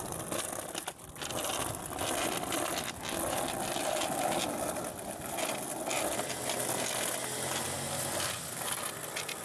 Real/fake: real